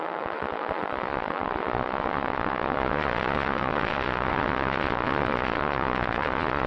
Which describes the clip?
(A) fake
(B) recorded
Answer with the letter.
A